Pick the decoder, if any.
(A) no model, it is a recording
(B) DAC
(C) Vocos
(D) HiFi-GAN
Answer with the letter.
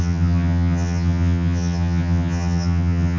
D